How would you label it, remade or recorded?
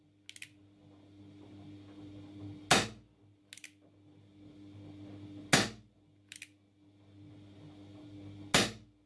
recorded